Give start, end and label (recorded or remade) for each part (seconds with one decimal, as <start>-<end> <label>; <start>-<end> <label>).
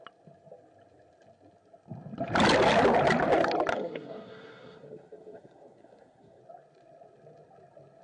0.0-3.7 recorded; 3.7-6.4 remade; 6.4-8.0 recorded